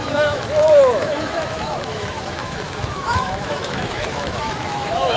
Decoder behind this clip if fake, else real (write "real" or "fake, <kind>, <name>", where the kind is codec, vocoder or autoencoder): fake, autoencoder, DAC-VAE